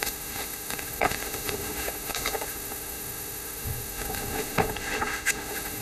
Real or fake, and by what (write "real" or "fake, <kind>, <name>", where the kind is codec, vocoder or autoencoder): fake, autoencoder, DAC-VAE